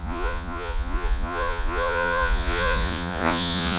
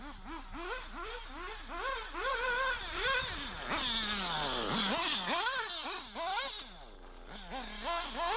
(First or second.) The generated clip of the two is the first